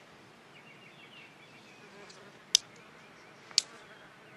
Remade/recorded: recorded